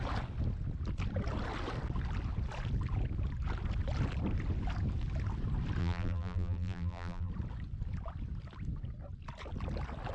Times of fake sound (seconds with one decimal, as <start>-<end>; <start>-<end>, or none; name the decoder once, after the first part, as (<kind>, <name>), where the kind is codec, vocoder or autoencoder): 5.8-7.3 (vocoder, BigVGAN v2)